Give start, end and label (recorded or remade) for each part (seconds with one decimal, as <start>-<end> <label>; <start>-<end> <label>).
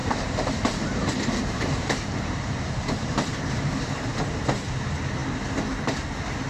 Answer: 0.0-3.8 remade; 3.8-6.5 recorded